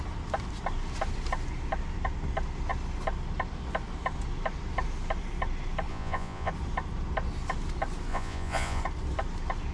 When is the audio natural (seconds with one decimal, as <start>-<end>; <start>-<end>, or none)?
0.0-5.9; 6.5-8.1; 8.8-9.7